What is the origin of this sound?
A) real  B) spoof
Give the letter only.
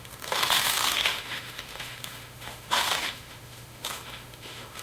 B